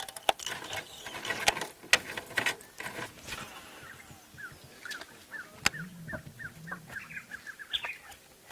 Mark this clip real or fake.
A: real